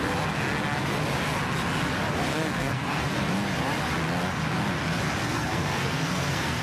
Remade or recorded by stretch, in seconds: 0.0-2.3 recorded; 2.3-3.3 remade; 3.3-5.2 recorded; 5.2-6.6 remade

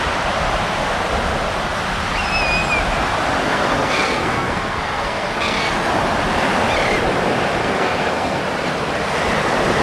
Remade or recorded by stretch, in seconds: 0.0-3.4 recorded; 3.4-5.7 remade; 5.7-7.6 recorded; 7.6-8.4 remade; 8.4-9.8 recorded

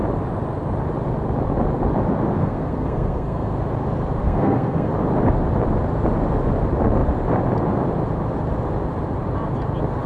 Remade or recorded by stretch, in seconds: 0.0-2.4 recorded; 2.4-3.5 remade; 3.5-4.2 recorded; 4.2-4.9 remade; 4.9-10.1 recorded

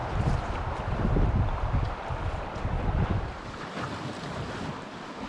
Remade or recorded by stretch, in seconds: 0.0-5.3 recorded